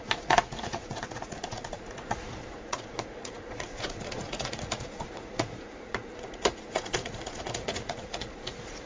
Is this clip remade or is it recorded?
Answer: remade